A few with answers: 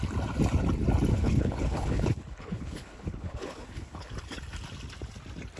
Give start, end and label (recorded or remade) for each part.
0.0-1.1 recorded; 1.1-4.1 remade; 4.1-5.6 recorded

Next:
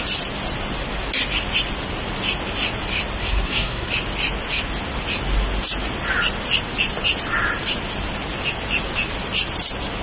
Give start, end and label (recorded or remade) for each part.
0.0-3.2 recorded; 3.2-3.9 remade; 3.9-10.0 recorded

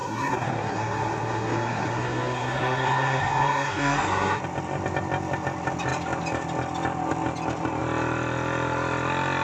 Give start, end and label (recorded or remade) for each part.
0.0-4.4 remade; 4.4-9.4 recorded